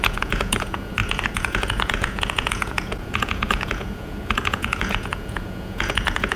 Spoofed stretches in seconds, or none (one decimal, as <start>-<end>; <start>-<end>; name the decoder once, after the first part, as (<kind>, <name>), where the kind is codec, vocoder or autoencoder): 0.0-6.4 (vocoder, Vocos)